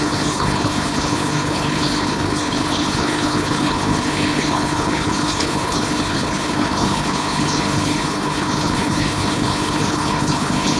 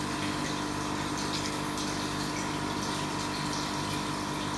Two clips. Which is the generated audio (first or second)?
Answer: first